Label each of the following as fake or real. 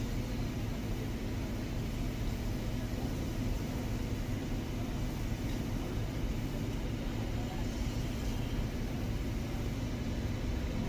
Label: real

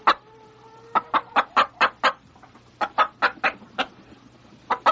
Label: real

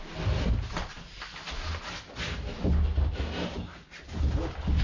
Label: real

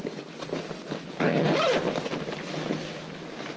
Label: real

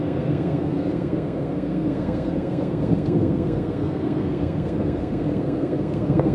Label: fake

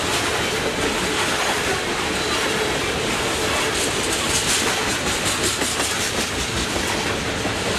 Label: real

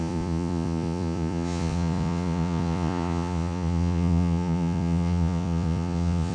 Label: fake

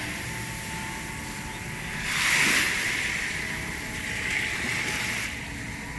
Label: real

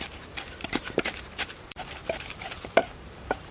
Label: fake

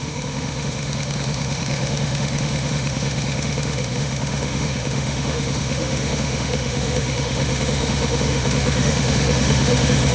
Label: fake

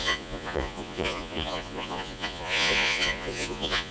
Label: fake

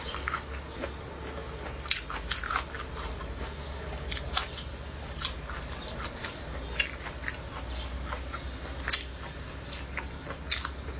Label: real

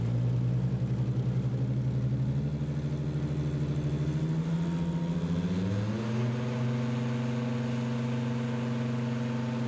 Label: real